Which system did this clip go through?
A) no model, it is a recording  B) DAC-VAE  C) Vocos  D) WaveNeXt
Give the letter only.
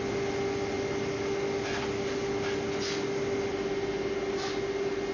A